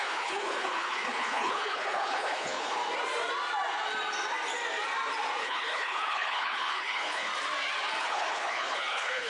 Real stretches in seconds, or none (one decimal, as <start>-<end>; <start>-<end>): 2.8-5.4; 7.3-8.0